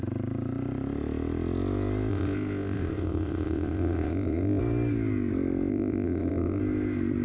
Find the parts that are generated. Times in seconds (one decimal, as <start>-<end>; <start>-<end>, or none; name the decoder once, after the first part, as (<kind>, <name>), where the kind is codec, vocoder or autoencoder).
2.1-4.6 (codec, ZipCodec); 5.7-6.6